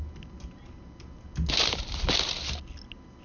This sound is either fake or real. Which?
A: real